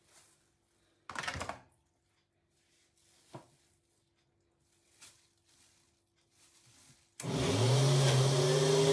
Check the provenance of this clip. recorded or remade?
recorded